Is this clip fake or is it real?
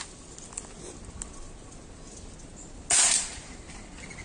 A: real